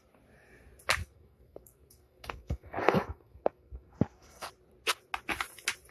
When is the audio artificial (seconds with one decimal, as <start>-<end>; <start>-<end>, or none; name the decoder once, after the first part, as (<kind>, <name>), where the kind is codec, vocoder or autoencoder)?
1.0-4.5 (codec, SNAC)